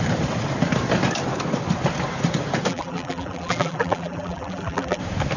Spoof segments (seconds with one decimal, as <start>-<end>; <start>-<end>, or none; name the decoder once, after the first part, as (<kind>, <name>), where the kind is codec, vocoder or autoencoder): 2.7-5.0 (vocoder, BigVGAN v2)

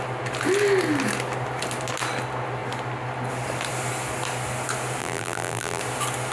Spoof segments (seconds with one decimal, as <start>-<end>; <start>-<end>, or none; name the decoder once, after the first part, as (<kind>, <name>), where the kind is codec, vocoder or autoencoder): 5.0-5.8 (vocoder, BigVGAN v2)